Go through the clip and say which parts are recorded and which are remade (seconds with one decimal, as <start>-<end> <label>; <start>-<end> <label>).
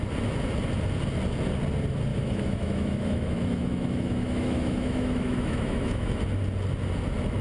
0.0-2.1 recorded; 2.1-6.1 remade; 6.1-7.4 recorded